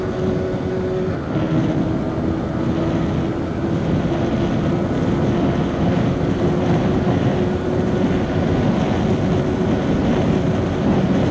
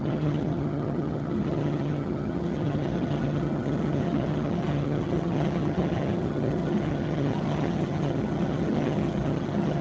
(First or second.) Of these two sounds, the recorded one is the first